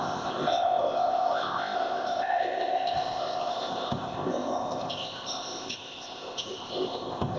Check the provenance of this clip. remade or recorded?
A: remade